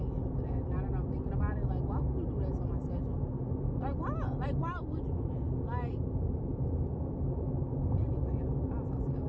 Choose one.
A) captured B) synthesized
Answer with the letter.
A